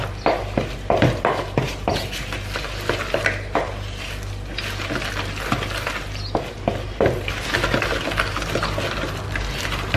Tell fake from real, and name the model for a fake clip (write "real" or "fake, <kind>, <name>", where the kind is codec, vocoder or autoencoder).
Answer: real